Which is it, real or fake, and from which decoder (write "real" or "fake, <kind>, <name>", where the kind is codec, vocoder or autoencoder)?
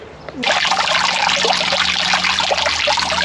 real